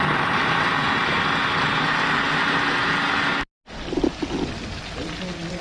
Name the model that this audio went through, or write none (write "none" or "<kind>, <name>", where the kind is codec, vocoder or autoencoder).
none